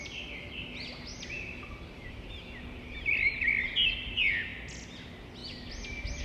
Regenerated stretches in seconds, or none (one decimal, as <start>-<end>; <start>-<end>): 1.1-2.3